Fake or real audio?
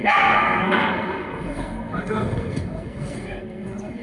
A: fake